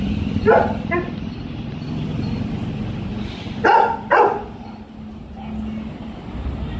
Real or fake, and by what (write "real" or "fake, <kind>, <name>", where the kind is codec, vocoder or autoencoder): real